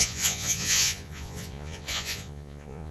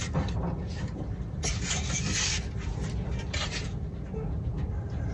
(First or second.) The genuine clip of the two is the second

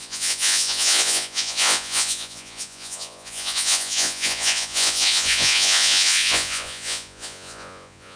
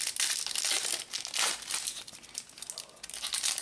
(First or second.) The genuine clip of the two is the second